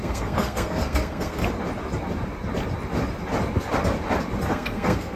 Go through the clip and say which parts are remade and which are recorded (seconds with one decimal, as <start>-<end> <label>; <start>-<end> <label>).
0.0-1.4 remade; 1.4-4.5 recorded; 4.5-5.2 remade